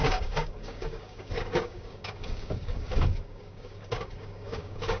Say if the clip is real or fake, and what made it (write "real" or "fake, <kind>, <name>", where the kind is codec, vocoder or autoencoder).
fake, codec, DAC